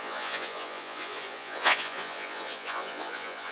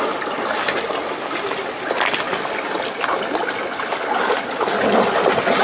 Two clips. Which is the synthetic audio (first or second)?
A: first